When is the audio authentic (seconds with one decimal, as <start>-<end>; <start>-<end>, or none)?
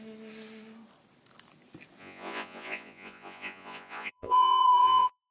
0.0-2.0